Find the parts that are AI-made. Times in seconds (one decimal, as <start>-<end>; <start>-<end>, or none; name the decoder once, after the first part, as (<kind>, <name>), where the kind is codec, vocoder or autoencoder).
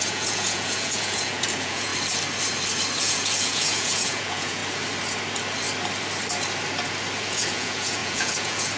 0.0-1.9 (vocoder, Vocos); 3.0-4.6; 7.2-8.8